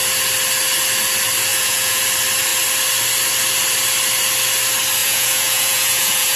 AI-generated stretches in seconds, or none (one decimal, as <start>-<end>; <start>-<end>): 1.5-2.0; 5.0-6.4